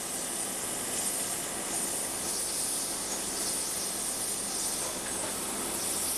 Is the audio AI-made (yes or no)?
no